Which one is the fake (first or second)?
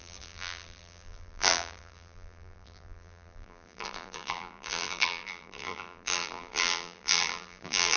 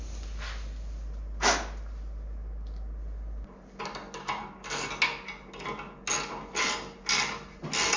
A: first